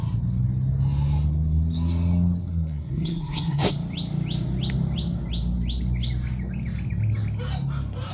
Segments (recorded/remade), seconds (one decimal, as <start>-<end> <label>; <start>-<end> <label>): 0.0-2.5 recorded; 2.5-3.7 remade; 3.7-8.1 recorded